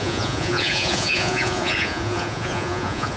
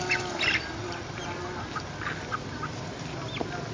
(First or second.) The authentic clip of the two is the second